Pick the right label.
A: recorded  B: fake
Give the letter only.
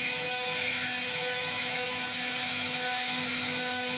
B